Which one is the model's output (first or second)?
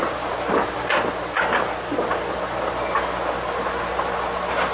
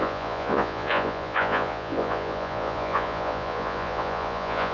second